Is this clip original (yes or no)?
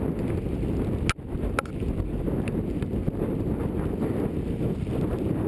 yes